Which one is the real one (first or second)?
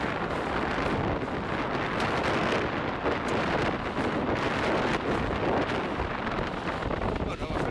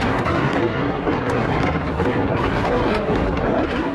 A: first